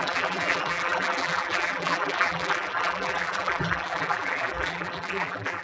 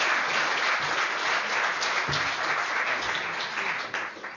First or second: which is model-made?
first